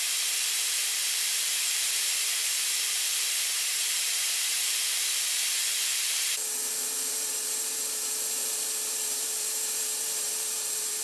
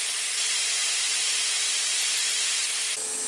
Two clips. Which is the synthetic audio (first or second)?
first